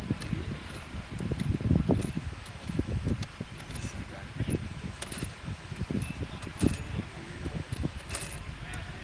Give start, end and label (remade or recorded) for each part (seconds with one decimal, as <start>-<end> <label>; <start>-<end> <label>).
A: 0.0-2.2 recorded; 2.2-3.1 remade; 3.1-4.6 recorded; 4.6-5.8 remade; 5.8-7.1 recorded; 7.1-8.1 remade; 8.1-9.0 recorded